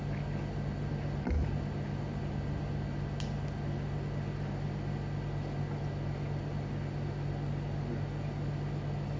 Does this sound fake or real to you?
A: real